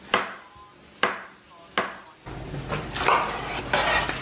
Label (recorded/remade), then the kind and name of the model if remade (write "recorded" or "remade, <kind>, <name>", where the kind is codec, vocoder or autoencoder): recorded